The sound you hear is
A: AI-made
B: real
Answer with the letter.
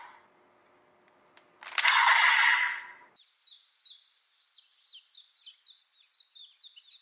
B